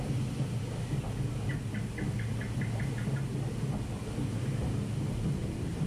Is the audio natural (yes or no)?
yes